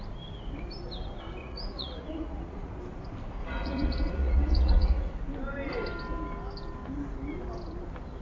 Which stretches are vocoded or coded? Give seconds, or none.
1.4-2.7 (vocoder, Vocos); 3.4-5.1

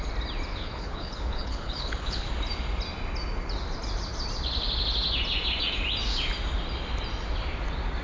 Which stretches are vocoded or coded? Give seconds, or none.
0.5-2.3 (codec, HILCodec)

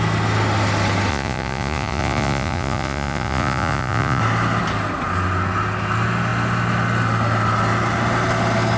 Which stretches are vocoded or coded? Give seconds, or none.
1.1-4.2 (vocoder, Vocos)

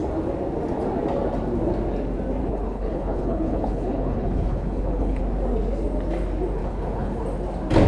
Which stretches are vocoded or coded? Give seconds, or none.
2.4-5.2 (codec, HILCodec); 6.6-7.2

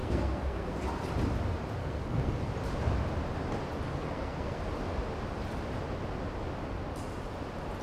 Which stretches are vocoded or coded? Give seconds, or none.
0.0-0.8 (codec, SNAC); 1.8-2.5; 3.9-4.6